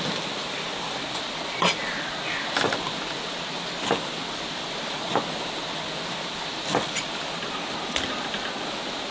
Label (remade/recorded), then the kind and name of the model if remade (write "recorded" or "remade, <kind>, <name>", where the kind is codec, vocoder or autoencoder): recorded